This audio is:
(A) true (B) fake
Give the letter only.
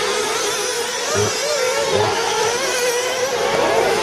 A